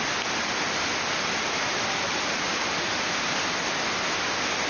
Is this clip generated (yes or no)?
no